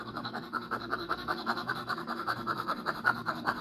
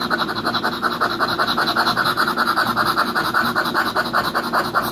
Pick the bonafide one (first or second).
second